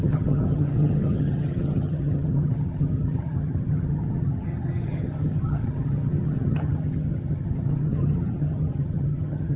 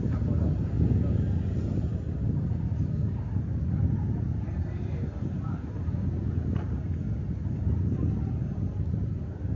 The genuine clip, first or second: second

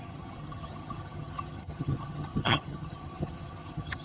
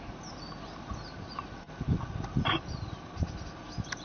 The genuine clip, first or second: second